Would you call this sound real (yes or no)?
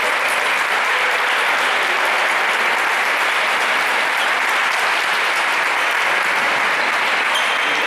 yes